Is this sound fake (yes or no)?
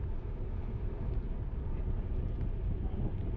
no